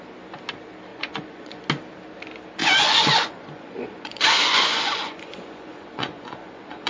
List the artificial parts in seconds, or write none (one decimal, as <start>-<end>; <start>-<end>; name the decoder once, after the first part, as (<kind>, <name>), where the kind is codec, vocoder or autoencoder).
0.9-1.6 (vocoder, Vocos); 2.6-6.9